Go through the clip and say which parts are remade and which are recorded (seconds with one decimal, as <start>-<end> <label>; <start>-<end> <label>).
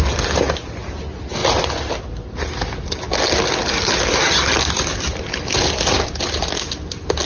0.0-7.3 recorded